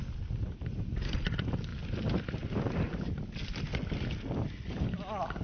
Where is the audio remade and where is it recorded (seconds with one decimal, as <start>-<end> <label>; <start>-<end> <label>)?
0.0-5.4 recorded